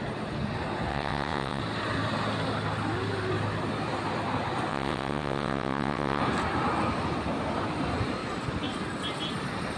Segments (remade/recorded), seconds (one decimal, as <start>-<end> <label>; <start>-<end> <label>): 0.0-0.9 recorded; 0.9-1.6 remade; 1.6-4.7 recorded; 4.7-6.2 remade; 6.2-9.8 recorded